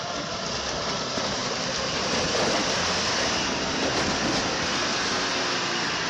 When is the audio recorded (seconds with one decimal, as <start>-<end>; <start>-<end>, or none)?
0.0-6.1